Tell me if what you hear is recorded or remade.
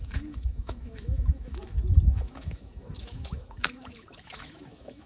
remade